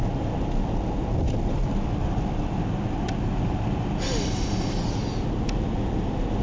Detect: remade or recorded recorded